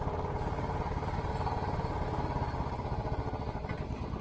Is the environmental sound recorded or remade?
recorded